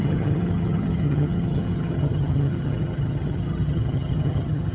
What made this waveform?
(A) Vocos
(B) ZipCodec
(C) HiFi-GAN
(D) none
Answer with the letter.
C